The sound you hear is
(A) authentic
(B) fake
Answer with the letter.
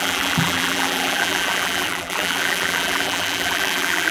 B